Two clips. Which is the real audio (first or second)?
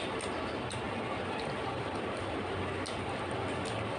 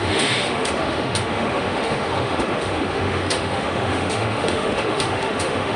first